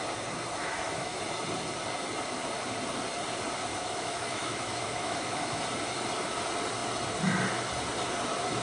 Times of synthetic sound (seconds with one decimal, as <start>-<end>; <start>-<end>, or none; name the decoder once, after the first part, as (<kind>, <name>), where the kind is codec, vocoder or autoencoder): 0.6-1.2 (autoencoder, DAC-VAE); 3.7-5.6